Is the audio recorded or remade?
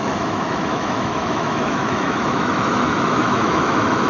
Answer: remade